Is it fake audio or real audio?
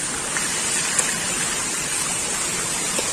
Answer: real